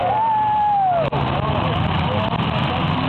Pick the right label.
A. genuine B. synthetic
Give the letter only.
A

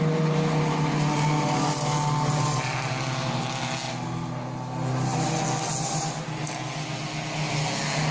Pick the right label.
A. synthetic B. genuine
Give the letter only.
B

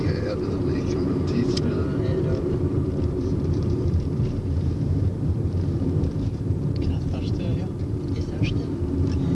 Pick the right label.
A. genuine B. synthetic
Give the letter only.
B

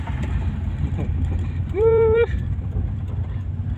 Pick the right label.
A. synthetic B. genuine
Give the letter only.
A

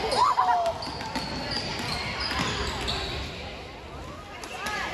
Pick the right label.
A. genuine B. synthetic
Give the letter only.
A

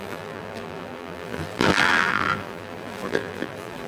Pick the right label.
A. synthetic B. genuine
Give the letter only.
A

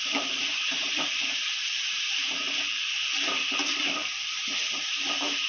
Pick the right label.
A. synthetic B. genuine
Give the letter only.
A